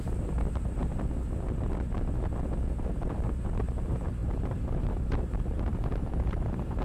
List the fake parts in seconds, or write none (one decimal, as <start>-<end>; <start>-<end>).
0.0-0.8; 2.9-6.8